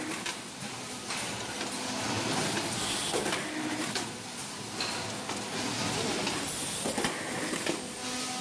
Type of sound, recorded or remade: recorded